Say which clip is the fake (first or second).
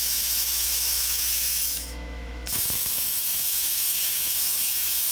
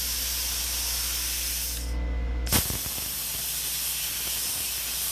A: first